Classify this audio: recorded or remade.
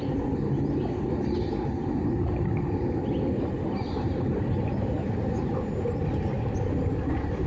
recorded